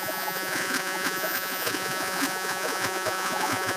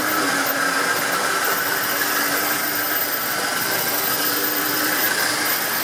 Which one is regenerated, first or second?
first